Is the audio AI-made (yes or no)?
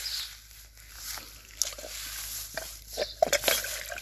no